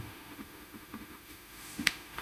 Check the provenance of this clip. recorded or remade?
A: remade